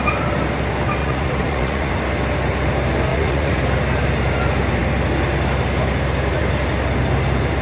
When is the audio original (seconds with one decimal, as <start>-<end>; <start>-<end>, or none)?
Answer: 0.0-1.0; 1.9-3.1; 3.6-7.6